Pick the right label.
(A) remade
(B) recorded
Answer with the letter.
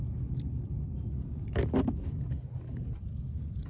B